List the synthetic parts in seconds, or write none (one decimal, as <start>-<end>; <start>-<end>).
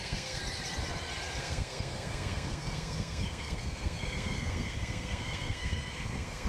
0.0-0.4; 1.4-6.5